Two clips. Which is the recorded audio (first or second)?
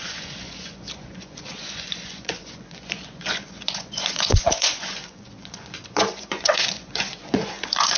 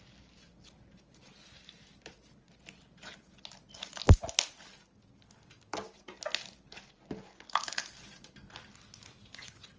second